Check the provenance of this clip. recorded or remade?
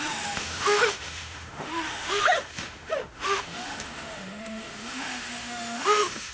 remade